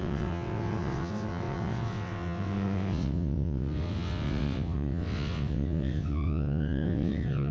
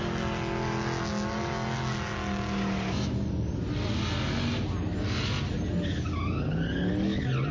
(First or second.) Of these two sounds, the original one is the second